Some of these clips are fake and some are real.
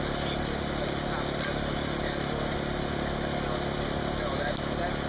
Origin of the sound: real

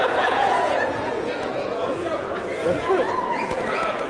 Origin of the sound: fake